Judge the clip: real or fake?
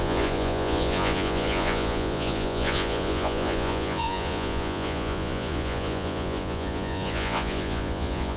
fake